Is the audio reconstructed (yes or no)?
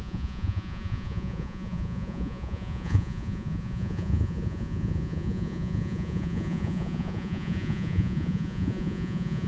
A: yes